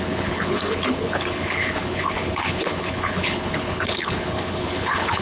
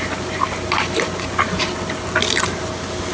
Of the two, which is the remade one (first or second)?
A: first